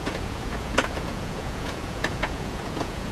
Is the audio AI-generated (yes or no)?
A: yes